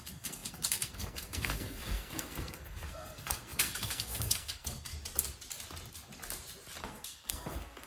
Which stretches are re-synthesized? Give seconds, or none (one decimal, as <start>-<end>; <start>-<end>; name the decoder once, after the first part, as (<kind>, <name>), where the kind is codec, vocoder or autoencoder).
0.0-4.9 (codec, SNAC); 6.8-7.9